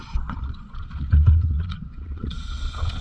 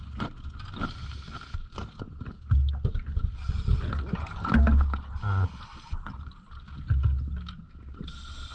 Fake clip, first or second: first